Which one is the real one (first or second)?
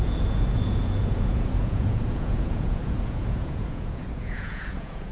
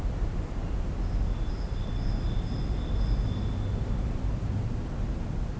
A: second